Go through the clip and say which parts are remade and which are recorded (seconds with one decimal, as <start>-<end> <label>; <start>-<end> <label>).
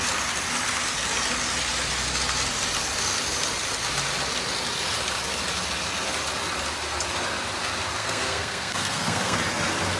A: 0.0-8.0 recorded; 8.0-9.4 remade; 9.4-10.0 recorded